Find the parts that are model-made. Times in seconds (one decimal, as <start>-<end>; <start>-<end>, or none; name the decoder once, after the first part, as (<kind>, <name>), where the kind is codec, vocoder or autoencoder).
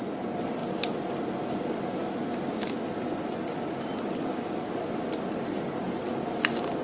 none